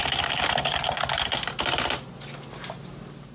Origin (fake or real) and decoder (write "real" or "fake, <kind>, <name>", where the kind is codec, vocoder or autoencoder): real